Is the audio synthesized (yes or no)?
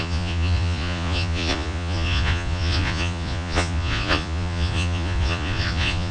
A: yes